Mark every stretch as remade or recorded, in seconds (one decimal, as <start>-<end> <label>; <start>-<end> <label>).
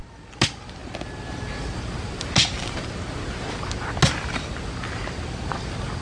0.0-6.0 recorded